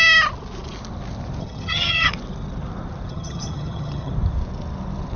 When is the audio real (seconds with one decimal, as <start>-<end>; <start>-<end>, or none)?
0.0-1.4; 2.1-3.1; 4.1-5.2